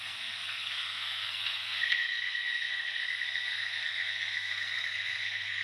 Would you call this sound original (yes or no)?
no